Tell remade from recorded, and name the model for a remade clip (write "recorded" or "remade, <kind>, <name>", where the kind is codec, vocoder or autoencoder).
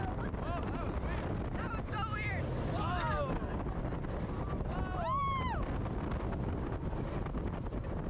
recorded